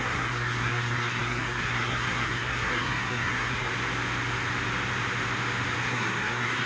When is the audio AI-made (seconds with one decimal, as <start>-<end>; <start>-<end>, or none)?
0.0-3.7; 5.8-6.7